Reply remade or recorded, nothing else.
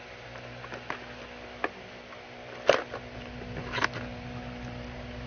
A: recorded